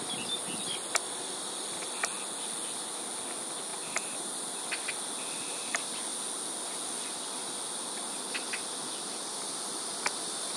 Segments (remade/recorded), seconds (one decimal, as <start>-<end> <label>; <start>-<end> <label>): 0.0-3.7 recorded; 3.7-4.9 remade; 4.9-10.6 recorded

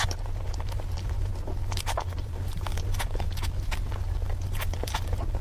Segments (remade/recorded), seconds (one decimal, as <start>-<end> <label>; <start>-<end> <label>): 0.0-5.4 recorded

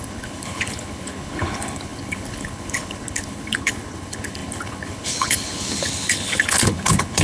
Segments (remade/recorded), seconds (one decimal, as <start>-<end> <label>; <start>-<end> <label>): 0.0-7.2 remade

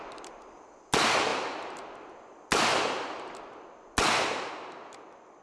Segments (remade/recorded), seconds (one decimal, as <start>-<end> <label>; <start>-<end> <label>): 0.0-5.4 recorded

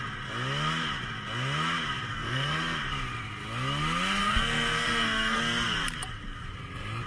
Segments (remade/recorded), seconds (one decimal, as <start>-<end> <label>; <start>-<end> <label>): 0.0-2.1 recorded; 2.1-2.8 remade; 2.8-4.2 recorded; 4.2-5.4 remade; 5.4-7.1 recorded

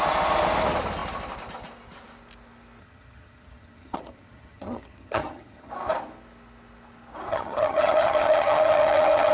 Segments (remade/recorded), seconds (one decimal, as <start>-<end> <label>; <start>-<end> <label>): 0.0-2.8 recorded; 2.8-5.7 remade; 5.7-7.3 recorded; 7.3-9.3 remade